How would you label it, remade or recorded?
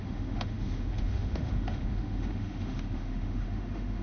remade